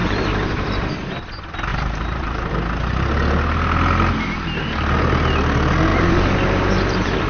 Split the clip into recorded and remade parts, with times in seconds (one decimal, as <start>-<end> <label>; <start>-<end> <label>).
0.0-0.9 remade; 0.9-1.7 recorded; 1.7-2.5 remade; 2.5-5.9 recorded; 5.9-7.3 remade